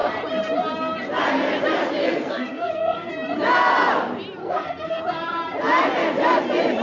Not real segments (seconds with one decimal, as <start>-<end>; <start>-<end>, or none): 2.0-3.1; 4.4-5.0